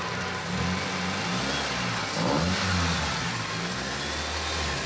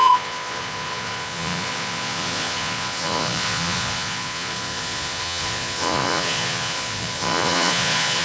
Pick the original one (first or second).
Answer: first